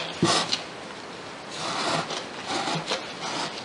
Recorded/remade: recorded